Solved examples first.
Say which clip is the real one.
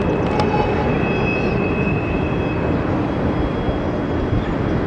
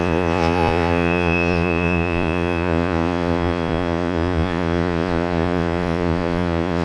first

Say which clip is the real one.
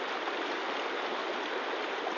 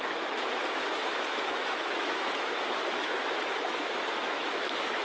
first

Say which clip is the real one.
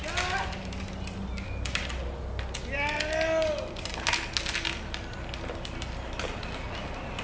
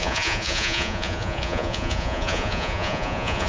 first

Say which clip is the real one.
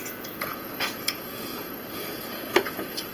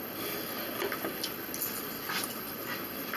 second